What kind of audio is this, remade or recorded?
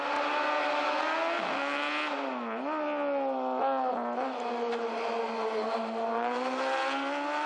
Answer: recorded